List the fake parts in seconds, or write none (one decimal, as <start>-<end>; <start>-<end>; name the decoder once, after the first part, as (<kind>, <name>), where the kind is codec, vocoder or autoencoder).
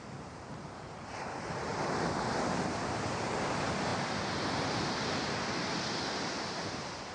0.0-1.7 (vocoder, BigVGAN v2); 2.9-3.9; 4.7-7.1